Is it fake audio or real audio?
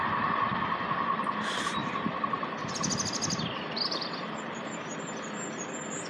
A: real